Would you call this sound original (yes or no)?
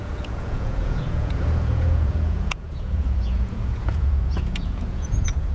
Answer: no